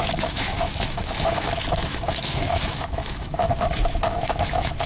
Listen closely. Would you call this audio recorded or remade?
remade